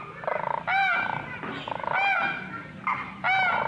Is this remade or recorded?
recorded